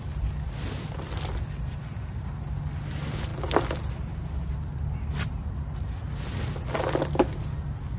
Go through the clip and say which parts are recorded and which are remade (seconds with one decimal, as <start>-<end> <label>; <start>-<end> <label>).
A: 0.0-8.0 recorded